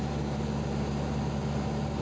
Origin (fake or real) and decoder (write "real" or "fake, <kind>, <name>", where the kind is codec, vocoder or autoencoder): real